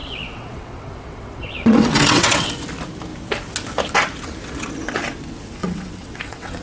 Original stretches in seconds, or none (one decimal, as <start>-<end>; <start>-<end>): 2.5-5.6